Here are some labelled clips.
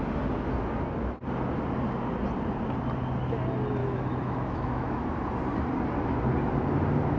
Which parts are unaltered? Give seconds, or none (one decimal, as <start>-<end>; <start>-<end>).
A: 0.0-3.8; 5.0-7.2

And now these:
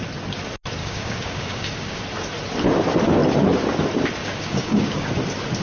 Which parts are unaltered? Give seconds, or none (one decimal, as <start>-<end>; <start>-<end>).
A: 0.0-0.8; 2.0-4.2; 5.1-5.6

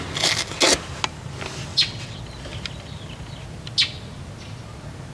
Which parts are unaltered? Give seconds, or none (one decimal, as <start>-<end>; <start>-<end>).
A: 0.0-1.7; 2.2-5.1

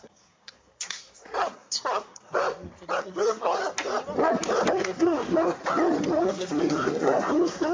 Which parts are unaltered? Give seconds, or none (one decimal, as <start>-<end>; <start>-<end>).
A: 2.4-3.0; 3.6-4.7; 5.6-6.1

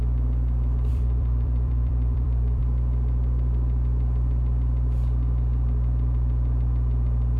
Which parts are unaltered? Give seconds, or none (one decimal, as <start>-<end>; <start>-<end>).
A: 0.0-0.9; 2.6-7.4

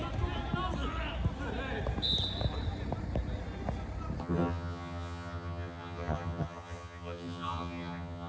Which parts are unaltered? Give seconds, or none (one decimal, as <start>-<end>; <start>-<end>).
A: 0.0-4.2

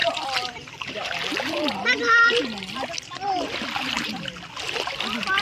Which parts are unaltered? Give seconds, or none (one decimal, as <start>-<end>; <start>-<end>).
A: 2.3-3.8; 4.9-5.4

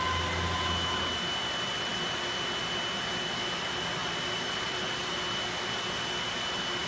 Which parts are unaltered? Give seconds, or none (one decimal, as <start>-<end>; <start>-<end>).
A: 0.0-6.9